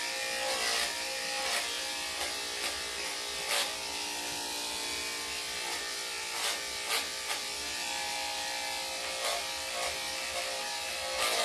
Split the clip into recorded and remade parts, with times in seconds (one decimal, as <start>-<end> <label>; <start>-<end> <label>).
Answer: 0.0-11.4 recorded